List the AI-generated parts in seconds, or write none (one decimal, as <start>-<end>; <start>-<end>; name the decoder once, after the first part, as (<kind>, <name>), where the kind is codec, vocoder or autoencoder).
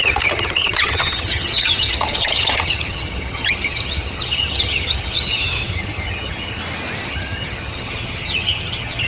0.0-6.6 (vocoder, HiFi-GAN); 7.1-9.1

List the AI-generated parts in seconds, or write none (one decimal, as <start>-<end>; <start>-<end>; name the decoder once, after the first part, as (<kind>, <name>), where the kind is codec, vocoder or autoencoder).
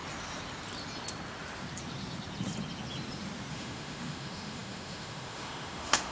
3.5-6.1 (autoencoder, DAC-VAE)